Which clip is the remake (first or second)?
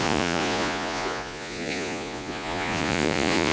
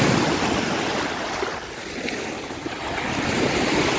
first